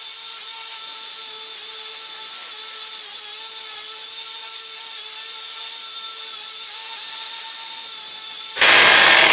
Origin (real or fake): real